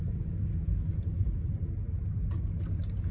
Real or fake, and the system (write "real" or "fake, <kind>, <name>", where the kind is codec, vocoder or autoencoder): real